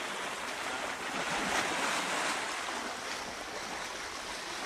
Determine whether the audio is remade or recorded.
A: recorded